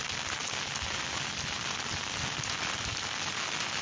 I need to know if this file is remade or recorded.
recorded